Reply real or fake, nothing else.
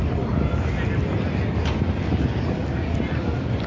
real